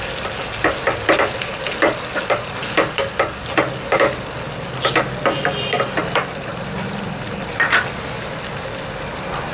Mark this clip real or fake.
real